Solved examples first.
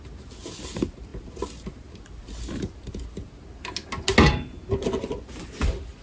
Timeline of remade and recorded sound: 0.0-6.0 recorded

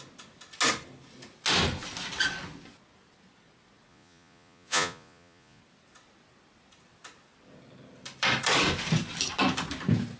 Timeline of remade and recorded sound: 0.0-3.9 recorded; 3.9-5.6 remade; 5.6-10.2 recorded

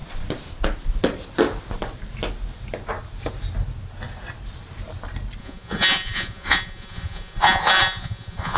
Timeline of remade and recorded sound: 0.0-5.4 recorded; 5.4-8.6 remade

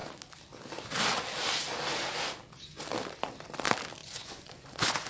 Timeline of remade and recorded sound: 0.0-4.0 recorded; 4.0-5.1 remade

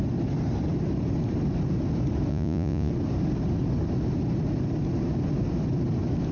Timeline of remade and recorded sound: 0.0-2.3 recorded; 2.3-2.9 remade; 2.9-6.3 recorded

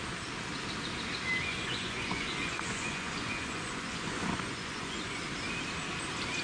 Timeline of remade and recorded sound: 0.0-1.4 recorded; 1.4-5.2 remade; 5.2-6.4 recorded

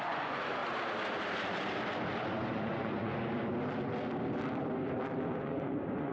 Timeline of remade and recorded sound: 0.0-0.6 remade; 0.6-2.5 recorded; 2.5-3.1 remade; 3.1-5.4 recorded; 5.4-6.1 remade

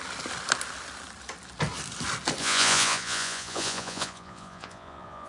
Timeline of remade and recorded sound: 0.0-2.4 recorded; 2.4-5.3 remade